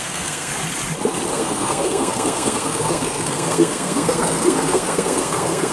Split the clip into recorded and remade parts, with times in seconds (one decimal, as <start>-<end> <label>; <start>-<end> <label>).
0.0-0.5 remade; 0.5-1.3 recorded; 1.3-5.7 remade